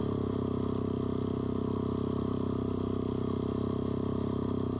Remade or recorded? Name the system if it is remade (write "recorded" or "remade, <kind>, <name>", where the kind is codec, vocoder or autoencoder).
recorded